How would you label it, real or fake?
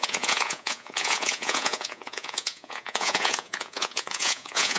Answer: fake